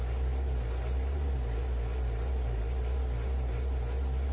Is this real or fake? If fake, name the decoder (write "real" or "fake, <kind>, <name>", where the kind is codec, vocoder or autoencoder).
real